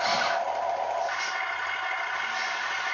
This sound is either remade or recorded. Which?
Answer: recorded